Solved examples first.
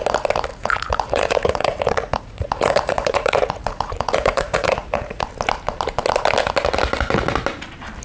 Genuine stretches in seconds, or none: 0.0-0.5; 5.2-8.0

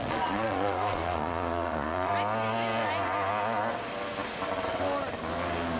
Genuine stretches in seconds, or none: 2.1-5.8